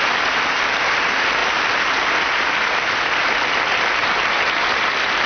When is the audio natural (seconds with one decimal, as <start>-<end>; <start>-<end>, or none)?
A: 0.0-5.3